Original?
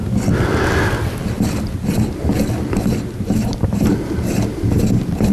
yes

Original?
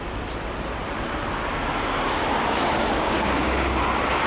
yes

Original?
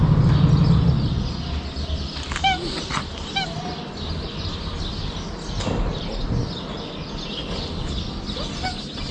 yes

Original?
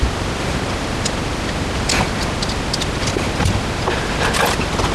yes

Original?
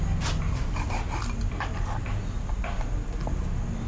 yes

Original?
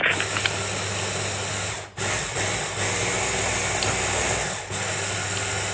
yes